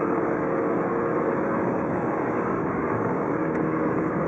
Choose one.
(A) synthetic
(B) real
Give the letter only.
A